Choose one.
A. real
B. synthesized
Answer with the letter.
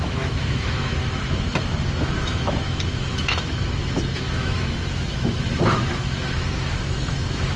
B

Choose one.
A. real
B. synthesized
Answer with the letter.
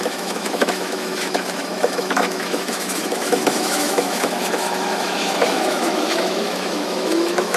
B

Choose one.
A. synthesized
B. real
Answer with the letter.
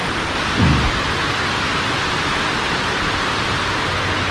B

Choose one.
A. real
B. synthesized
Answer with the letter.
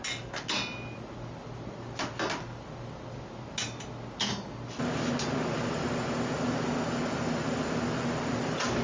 A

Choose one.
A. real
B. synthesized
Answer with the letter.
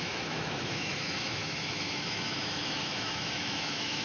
B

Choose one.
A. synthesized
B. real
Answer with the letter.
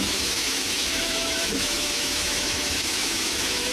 A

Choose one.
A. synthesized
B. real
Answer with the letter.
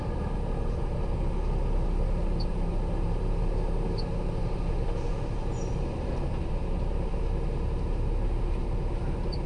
B